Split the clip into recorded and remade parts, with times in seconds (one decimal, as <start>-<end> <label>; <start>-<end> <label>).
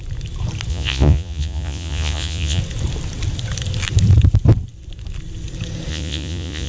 0.0-0.7 recorded; 0.7-2.6 remade; 2.6-5.9 recorded; 5.9-6.7 remade